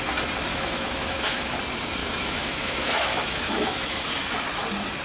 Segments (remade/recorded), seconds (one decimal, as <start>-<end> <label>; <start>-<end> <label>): 0.0-0.5 recorded; 0.5-1.5 remade; 1.5-2.0 recorded; 2.0-4.1 remade; 4.1-5.0 recorded